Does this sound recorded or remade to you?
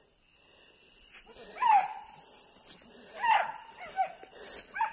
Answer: recorded